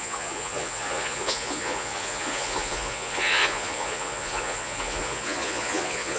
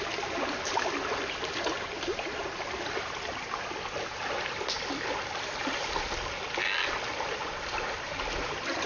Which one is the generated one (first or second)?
first